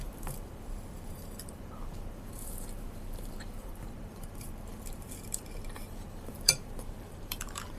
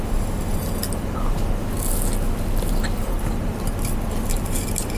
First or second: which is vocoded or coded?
first